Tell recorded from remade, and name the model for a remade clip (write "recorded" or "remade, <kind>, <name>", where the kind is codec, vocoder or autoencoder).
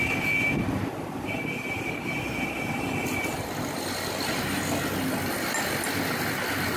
recorded